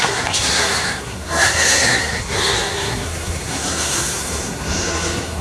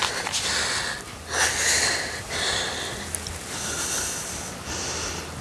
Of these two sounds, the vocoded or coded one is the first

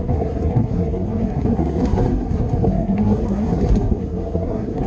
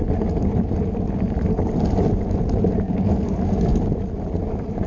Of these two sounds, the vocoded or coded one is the first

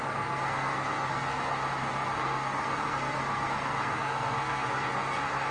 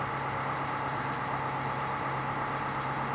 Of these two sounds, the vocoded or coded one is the first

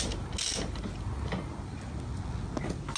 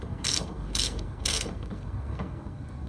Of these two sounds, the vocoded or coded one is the second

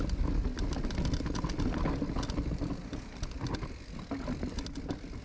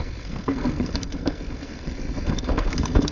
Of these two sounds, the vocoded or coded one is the second